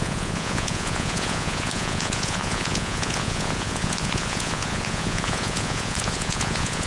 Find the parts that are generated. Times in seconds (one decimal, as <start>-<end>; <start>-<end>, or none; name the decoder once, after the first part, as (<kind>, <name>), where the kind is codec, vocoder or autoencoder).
0.0-6.9 (vocoder, Vocos)